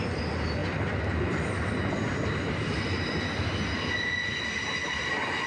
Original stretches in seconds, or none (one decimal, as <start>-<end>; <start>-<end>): 0.0-5.5